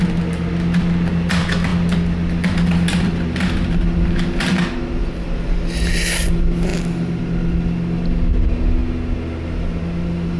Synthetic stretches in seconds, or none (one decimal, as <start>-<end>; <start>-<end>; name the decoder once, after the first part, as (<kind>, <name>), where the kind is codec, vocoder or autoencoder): none